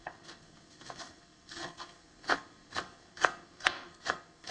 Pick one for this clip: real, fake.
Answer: fake